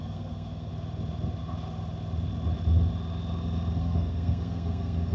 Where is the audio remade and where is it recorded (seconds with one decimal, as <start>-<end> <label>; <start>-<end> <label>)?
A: 0.0-0.7 remade; 0.7-3.8 recorded; 3.8-5.1 remade